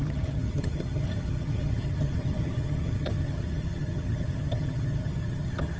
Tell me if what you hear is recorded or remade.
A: remade